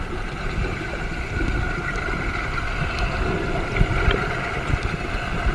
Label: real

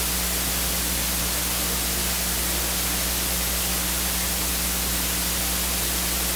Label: real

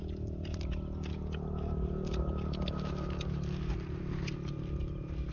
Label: real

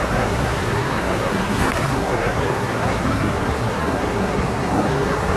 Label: fake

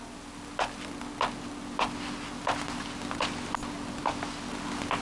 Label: real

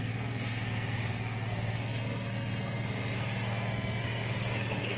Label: fake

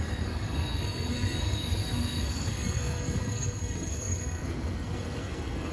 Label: fake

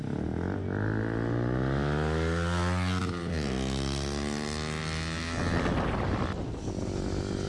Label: real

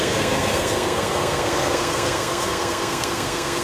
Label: fake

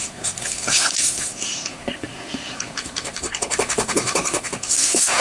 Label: fake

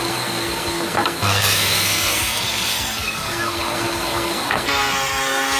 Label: fake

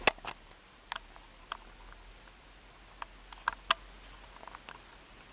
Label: real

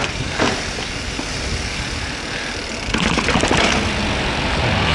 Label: real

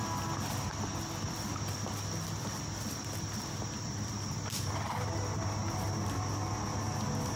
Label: real